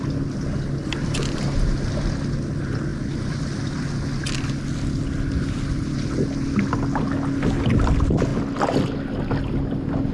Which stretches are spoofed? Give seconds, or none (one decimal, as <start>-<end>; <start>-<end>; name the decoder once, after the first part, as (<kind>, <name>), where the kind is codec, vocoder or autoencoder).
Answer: none